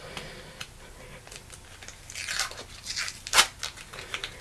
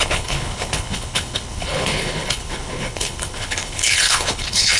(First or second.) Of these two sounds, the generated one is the second